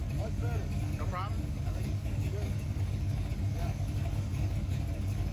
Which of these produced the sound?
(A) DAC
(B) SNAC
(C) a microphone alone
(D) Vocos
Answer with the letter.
A